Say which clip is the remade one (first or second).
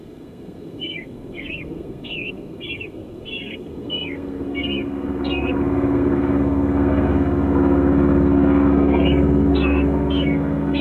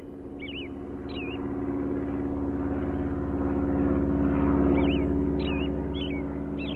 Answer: first